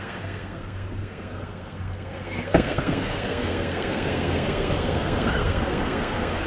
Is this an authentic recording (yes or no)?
no